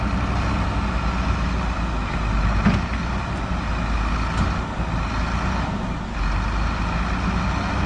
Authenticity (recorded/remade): recorded